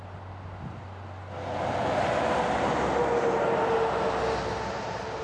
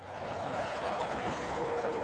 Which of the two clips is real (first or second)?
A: first